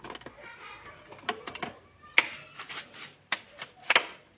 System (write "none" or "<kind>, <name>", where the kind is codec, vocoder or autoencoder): none